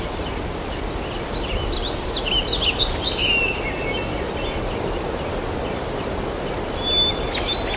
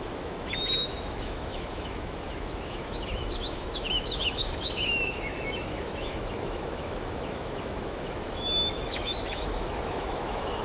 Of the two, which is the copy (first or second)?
second